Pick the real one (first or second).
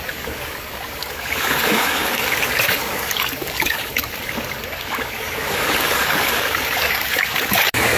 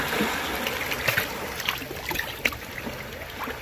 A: second